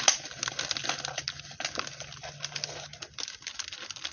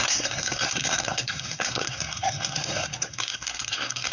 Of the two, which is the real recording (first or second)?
first